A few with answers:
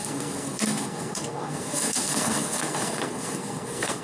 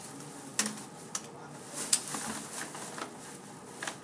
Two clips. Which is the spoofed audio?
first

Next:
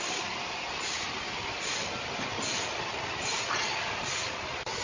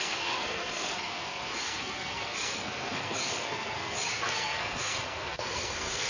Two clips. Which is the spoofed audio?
second